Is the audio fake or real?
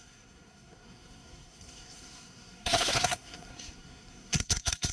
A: fake